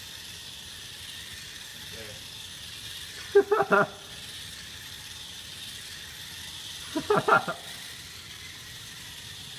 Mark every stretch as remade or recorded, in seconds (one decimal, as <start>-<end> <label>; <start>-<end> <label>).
0.0-9.6 recorded